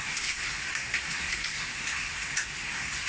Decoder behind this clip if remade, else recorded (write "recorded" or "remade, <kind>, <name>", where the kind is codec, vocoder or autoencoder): remade, codec, SNAC